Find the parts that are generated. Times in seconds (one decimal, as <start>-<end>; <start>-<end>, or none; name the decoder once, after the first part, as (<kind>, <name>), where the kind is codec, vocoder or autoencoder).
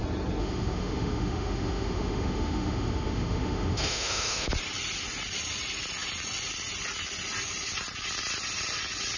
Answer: 0.4-4.5 (autoencoder, DAC-VAE)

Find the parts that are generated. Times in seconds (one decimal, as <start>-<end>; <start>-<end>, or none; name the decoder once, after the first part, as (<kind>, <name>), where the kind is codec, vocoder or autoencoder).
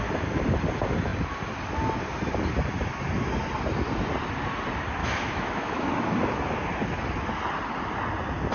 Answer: 5.0-5.9 (autoencoder, DAC-VAE)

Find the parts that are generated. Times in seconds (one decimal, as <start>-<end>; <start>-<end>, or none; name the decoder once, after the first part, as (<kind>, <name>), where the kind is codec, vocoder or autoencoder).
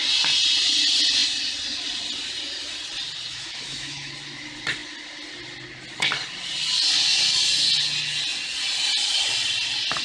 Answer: 3.3-4.1 (autoencoder, DAC-VAE)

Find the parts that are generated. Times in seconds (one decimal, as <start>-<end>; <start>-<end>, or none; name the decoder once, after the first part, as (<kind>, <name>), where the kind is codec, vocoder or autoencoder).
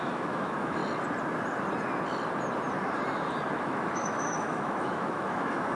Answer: 0.0-0.8 (autoencoder, DAC-VAE); 3.5-5.8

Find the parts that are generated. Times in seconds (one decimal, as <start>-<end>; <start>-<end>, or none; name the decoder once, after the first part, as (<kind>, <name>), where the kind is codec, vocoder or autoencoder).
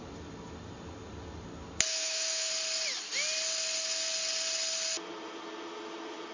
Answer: 1.9-2.5 (autoencoder, DAC-VAE)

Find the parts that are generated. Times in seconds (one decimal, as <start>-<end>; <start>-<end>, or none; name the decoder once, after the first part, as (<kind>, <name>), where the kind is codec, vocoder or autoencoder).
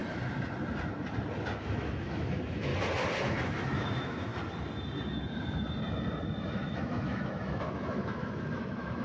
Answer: 1.6-2.7 (autoencoder, DAC-VAE); 3.2-4.3; 6.5-9.0